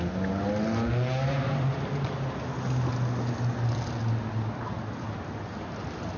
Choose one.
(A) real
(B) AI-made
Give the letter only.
A